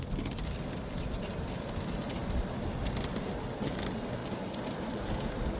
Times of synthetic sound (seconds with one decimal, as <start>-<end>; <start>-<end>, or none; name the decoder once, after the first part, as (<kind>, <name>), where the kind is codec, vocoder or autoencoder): 2.2-2.9 (vocoder, BigVGAN v2); 4.2-5.0

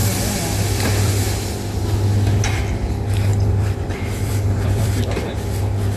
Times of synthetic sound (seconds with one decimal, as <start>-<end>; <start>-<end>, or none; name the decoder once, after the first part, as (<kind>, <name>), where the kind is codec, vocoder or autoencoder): 0.0-1.1 (vocoder, BigVGAN v2); 3.3-5.6

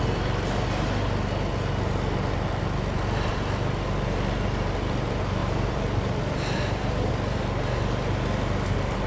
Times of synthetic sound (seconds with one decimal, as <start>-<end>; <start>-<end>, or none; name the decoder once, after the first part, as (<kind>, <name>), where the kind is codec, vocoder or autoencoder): 5.4-7.1 (vocoder, BigVGAN v2)

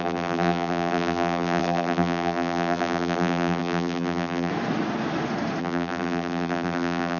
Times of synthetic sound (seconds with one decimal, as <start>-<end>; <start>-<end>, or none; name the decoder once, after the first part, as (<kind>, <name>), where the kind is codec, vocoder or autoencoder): 0.0-4.5 (vocoder, BigVGAN v2); 5.6-7.2